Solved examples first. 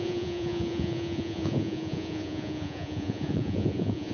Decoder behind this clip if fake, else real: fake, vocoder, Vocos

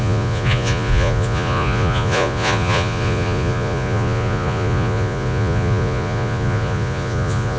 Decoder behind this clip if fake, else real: fake, vocoder, Vocos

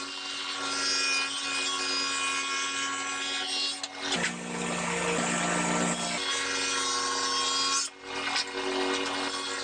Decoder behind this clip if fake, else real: real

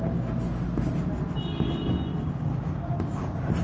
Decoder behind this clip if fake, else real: real